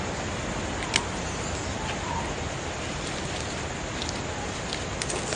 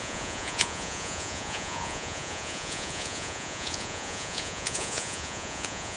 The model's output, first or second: second